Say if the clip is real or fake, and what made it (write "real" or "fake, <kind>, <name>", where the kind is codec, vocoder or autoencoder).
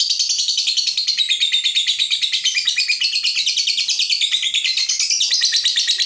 real